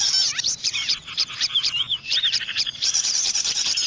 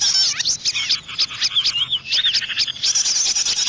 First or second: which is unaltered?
second